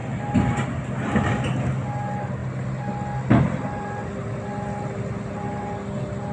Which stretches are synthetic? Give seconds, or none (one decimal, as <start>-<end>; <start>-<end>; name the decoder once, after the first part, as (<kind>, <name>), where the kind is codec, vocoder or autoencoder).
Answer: none